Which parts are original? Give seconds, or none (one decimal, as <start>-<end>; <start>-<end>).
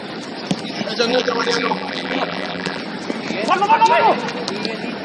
0.0-1.1; 2.8-5.0